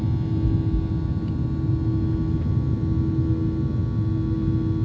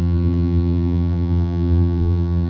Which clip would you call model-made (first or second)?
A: second